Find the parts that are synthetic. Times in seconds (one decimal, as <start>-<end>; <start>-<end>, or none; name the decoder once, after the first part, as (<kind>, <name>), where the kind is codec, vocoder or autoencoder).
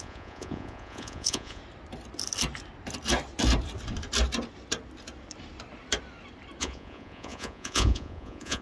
0.0-1.6 (vocoder, Vocos); 6.6-8.6